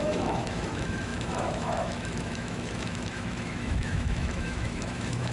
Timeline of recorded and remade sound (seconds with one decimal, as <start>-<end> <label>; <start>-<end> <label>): 0.0-5.3 remade

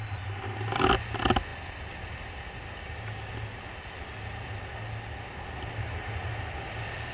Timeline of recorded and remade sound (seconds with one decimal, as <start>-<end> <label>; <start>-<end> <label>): 0.0-7.1 recorded

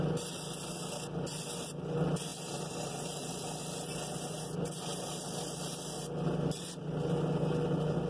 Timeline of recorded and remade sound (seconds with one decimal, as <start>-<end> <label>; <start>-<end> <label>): 0.0-8.1 recorded

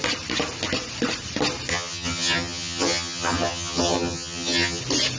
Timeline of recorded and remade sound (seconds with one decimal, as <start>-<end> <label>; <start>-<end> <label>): 0.0-1.7 recorded; 1.7-4.8 remade; 4.8-5.2 recorded

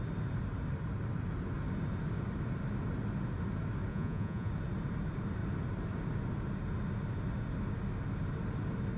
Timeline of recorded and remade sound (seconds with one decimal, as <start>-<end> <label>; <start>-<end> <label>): 0.0-3.9 recorded; 3.9-4.5 remade; 4.5-9.0 recorded